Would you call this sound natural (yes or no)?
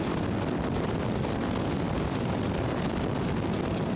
yes